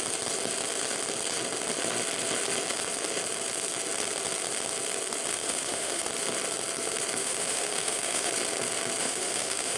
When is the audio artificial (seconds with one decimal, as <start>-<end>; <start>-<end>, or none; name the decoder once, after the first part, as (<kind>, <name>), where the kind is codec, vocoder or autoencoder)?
5.3-6.0 (autoencoder, DAC-VAE); 7.2-8.3; 9.0-9.8